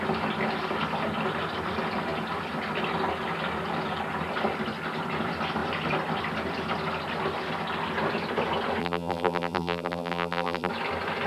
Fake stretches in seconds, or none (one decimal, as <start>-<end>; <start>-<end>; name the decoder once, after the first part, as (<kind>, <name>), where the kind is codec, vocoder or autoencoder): 8.8-10.7 (vocoder, BigVGAN v2)